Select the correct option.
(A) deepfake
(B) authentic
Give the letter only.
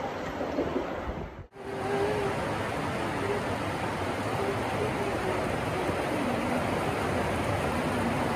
B